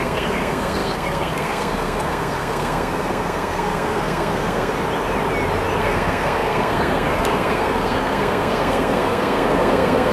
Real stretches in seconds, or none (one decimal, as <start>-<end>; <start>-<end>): 4.7-5.8